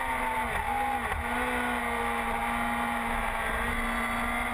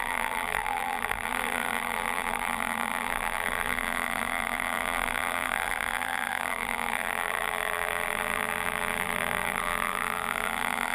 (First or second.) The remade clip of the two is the second